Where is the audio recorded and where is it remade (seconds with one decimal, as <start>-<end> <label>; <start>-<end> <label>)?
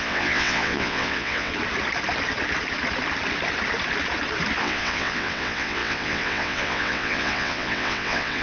0.0-1.5 remade; 1.5-4.6 recorded; 4.6-8.4 remade